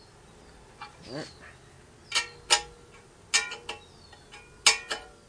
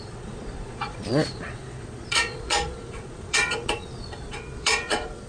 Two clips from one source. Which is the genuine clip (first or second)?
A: first